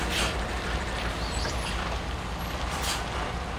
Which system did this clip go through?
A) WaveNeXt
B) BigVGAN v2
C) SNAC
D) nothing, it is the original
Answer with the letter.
D